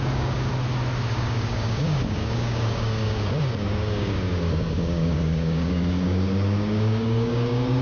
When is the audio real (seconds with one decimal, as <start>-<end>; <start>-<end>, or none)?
0.5-1.1